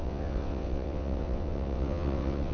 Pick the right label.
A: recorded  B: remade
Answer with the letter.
B